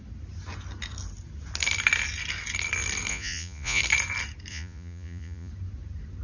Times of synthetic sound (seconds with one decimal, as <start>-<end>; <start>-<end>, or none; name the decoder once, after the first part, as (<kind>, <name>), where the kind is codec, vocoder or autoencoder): 3.1-3.8 (vocoder, Vocos); 4.5-5.5